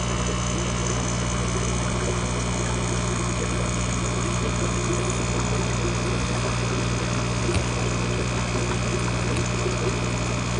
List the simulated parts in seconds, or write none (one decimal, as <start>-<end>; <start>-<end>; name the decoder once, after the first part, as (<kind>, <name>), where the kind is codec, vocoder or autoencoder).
none